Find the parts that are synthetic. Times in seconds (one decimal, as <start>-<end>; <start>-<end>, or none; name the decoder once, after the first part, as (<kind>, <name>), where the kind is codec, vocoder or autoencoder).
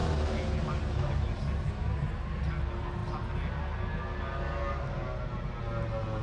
none